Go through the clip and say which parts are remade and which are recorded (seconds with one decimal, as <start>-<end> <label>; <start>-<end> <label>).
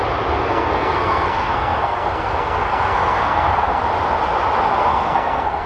0.0-0.4 recorded; 0.4-3.8 remade; 3.8-4.8 recorded; 4.8-5.7 remade